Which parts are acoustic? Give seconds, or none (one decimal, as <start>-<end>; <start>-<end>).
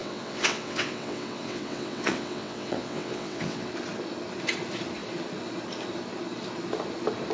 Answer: 3.7-7.3